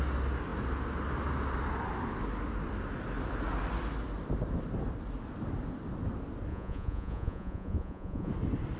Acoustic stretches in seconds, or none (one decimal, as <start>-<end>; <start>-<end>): 0.0-6.5; 8.3-8.8